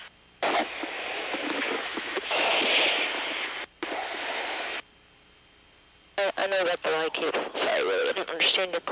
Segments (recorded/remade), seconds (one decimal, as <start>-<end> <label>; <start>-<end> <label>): 0.0-0.6 recorded; 0.6-2.6 remade; 2.6-8.9 recorded